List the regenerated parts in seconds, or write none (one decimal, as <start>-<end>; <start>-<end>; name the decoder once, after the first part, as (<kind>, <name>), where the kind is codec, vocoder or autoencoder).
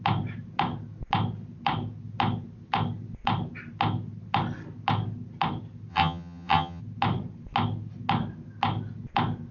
5.9-6.8 (vocoder, HiFi-GAN)